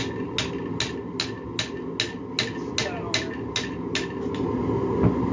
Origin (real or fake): real